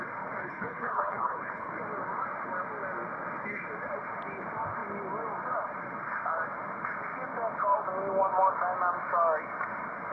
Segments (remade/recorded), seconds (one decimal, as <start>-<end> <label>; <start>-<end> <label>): 0.0-0.4 recorded; 0.4-1.7 remade; 1.7-10.1 recorded